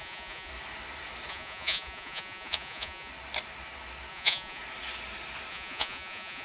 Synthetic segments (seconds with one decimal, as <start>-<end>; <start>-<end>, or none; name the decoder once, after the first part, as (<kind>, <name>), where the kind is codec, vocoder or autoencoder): 0.0-0.5 (vocoder, Vocos); 1.3-3.1; 4.1-4.6; 5.5-6.4